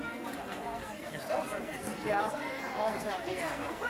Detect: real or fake fake